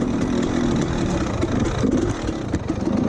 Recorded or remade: recorded